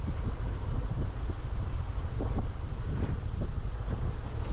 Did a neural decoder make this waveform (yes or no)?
no